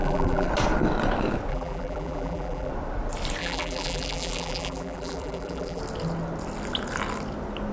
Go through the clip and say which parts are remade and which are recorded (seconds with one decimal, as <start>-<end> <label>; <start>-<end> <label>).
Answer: 0.0-0.5 remade; 0.5-1.5 recorded; 1.5-2.7 remade; 2.7-3.4 recorded; 3.4-5.8 remade; 5.8-7.7 recorded